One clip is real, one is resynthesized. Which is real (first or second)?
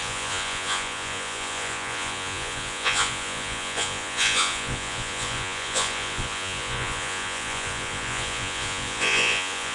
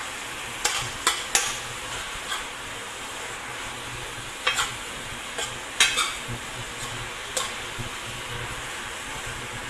second